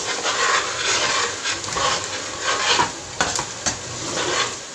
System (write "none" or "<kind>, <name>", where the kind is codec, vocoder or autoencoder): none